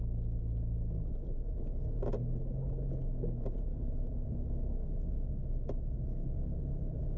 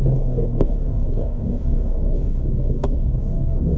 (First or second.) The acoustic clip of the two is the first